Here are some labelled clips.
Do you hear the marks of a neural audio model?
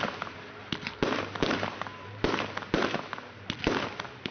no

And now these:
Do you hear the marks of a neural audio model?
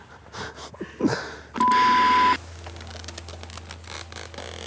no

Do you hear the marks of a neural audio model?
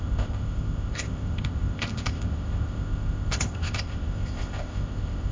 yes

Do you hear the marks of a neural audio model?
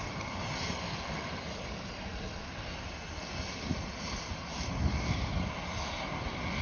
no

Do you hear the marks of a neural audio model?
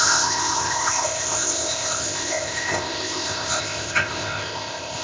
yes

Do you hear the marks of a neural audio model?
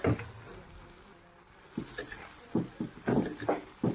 no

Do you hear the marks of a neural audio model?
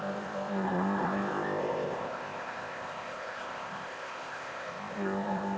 yes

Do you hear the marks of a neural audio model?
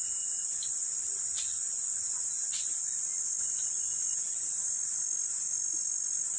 no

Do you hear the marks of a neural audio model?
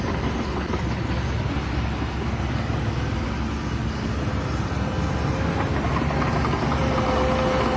no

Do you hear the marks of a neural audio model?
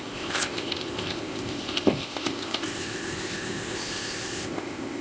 yes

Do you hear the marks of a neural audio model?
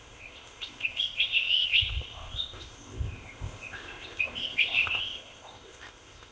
yes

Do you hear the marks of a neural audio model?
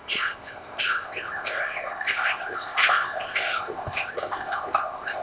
yes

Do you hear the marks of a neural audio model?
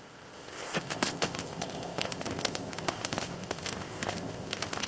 yes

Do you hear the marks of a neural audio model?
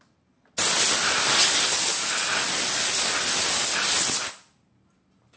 no